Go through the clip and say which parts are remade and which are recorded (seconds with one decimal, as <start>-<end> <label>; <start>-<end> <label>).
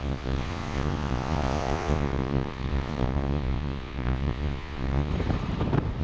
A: 0.0-5.1 remade; 5.1-6.0 recorded